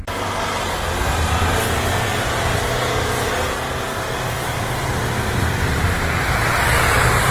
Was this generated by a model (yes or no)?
no